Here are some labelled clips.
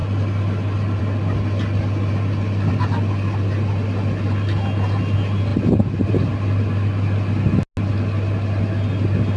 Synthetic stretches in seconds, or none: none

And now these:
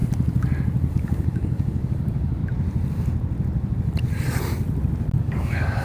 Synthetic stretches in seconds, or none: 0.9-2.4 (codec, DAC); 5.2-5.8

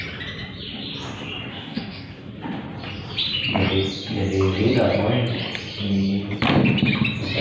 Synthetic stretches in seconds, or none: 1.5-2.3 (codec, DAC)

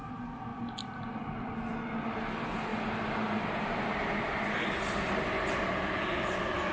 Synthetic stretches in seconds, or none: none